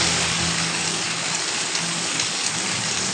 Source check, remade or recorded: remade